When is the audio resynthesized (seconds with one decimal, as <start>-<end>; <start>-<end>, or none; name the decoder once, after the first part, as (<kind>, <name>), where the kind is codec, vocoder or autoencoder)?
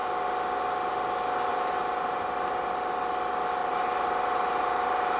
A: 1.5-2.7 (vocoder, BigVGAN v2); 3.6-5.2